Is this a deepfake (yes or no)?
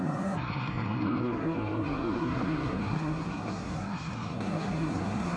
yes